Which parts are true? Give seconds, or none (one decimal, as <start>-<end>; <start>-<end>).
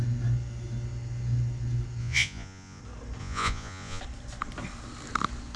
0.0-2.0; 2.8-3.2; 4.0-5.6